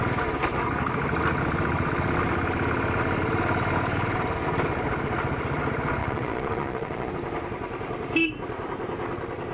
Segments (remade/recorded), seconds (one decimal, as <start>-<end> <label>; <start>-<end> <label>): 0.0-6.0 recorded; 6.0-7.1 remade; 7.1-9.5 recorded